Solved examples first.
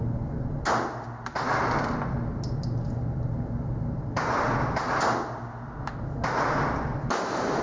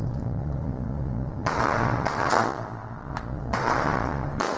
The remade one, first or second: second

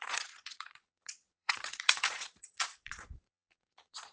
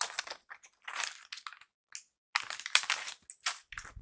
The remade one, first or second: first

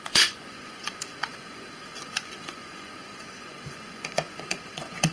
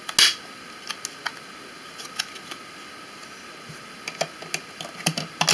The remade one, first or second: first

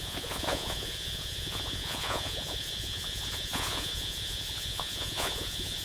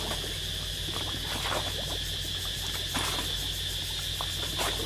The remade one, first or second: first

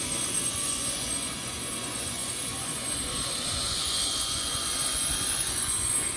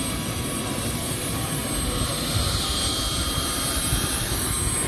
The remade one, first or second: first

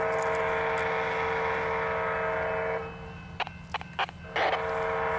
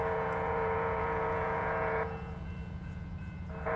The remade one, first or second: second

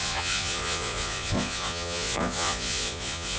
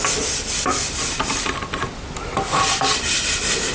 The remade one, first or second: first